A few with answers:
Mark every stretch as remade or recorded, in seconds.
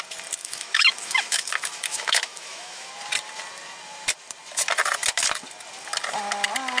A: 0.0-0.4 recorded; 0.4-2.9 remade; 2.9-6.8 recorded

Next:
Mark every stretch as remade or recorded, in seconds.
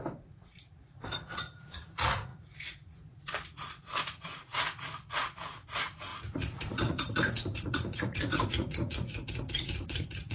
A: 0.0-10.3 remade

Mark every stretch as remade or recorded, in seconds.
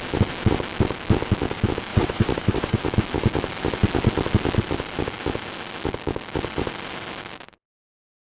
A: 0.0-1.9 recorded; 1.9-2.8 remade; 2.8-8.3 recorded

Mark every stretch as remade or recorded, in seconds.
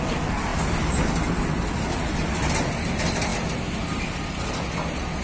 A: 0.0-5.2 recorded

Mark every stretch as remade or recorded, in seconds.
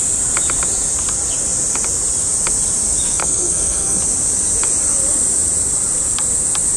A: 0.0-3.2 recorded; 3.2-4.0 remade; 4.0-6.8 recorded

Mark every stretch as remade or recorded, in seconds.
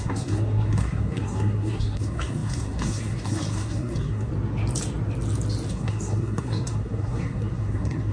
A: 0.0-4.3 remade; 4.3-5.7 recorded; 5.7-8.1 remade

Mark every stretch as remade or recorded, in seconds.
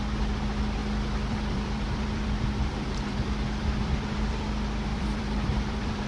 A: 0.0-0.8 recorded; 0.8-4.5 remade; 4.5-4.9 recorded; 4.9-6.1 remade